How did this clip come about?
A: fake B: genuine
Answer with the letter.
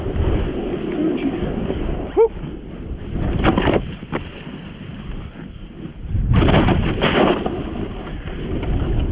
B